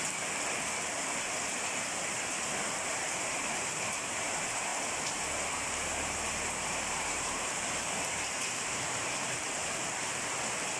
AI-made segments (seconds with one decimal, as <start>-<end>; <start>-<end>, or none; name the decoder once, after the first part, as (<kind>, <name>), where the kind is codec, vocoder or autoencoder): 2.9-9.6 (vocoder, BigVGAN v2)